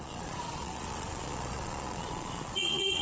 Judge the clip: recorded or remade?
remade